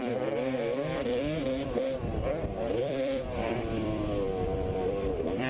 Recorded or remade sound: remade